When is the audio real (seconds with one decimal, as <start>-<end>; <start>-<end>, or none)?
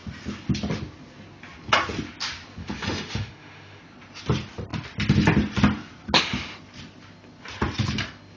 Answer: 0.0-2.6; 3.8-8.4